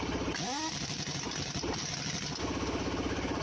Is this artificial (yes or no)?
no